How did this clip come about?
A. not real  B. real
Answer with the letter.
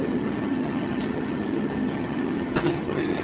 A